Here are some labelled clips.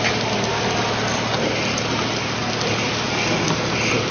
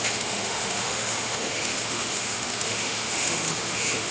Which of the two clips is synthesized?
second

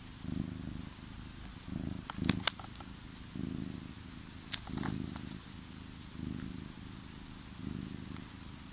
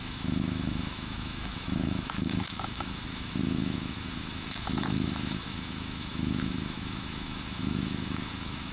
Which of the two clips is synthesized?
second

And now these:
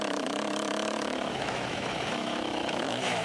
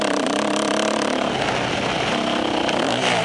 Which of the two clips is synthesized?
first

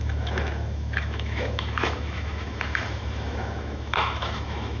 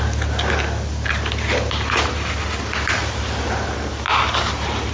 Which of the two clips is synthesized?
first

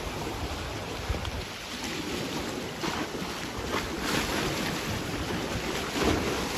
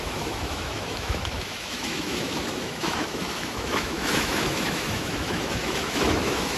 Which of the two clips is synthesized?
second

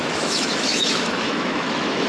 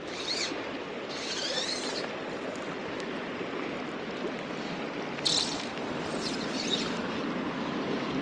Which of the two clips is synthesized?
first